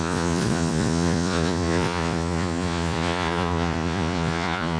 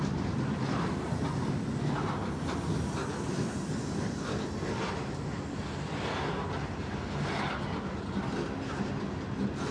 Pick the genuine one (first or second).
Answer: second